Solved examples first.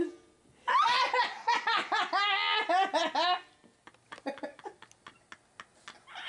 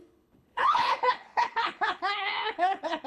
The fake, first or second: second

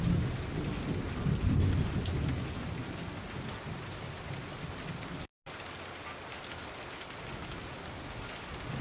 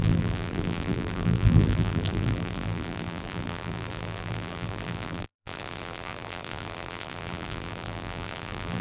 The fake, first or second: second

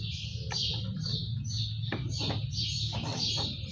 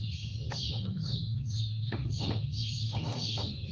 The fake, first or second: second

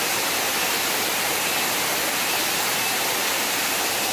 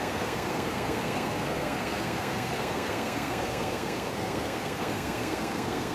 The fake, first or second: second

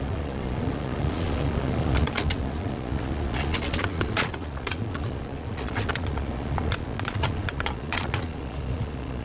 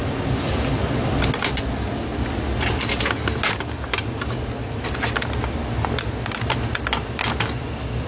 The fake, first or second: first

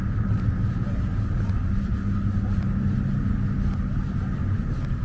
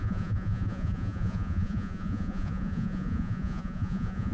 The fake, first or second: second